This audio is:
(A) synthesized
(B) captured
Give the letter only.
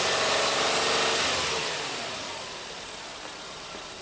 B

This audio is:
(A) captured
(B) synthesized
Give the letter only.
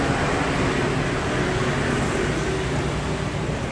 A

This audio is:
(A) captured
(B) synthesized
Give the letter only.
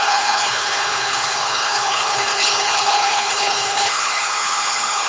B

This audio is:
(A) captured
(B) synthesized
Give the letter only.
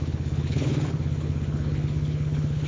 B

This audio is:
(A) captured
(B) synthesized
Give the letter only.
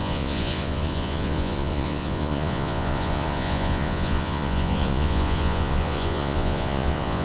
B